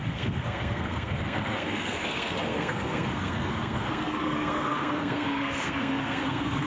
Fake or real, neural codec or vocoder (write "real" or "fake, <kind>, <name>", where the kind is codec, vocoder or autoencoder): fake, codec, SNAC